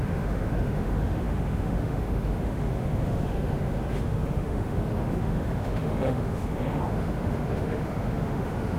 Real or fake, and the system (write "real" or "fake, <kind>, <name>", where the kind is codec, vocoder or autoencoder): fake, autoencoder, DAC-VAE